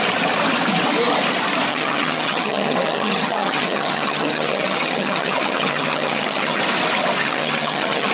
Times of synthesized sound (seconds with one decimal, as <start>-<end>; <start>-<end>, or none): 1.7-6.6; 7.2-8.1